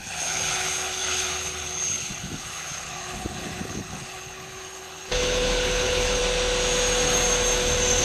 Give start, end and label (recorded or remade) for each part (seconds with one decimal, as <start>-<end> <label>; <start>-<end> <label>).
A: 0.0-6.2 remade; 6.2-8.0 recorded